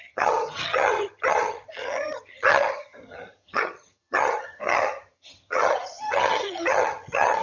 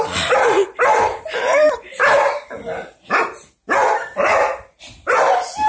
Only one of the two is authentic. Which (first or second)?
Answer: second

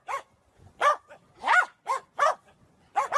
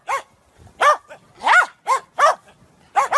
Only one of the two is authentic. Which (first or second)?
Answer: second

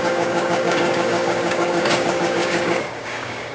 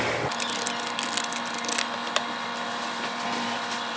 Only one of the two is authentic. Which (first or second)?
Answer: second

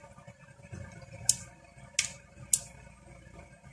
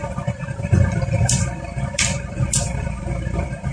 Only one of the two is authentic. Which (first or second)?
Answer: first